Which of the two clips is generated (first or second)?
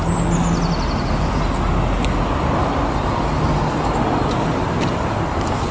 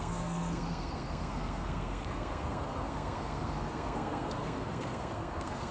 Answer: second